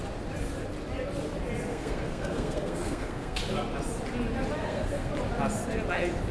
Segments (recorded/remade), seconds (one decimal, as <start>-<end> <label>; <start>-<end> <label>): 0.0-1.7 recorded; 1.7-3.4 remade; 3.4-4.6 recorded; 4.6-5.1 remade; 5.1-6.3 recorded